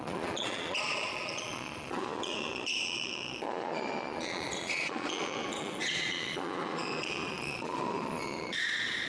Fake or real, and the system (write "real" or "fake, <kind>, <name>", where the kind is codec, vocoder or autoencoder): fake, vocoder, Vocos